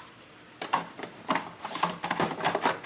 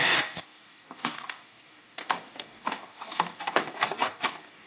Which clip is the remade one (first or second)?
second